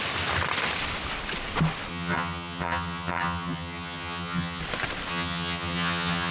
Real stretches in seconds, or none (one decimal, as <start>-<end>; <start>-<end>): 0.0-1.9; 4.6-5.1